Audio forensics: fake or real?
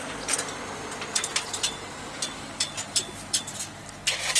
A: real